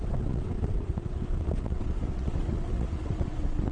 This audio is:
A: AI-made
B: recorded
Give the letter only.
A